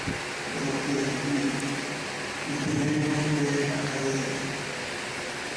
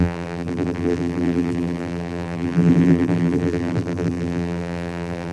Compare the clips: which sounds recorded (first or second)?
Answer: first